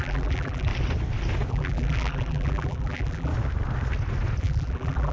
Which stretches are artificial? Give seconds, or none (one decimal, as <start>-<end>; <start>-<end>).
0.0-0.7; 1.5-3.3; 4.4-5.1